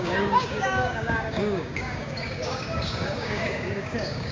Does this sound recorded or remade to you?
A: remade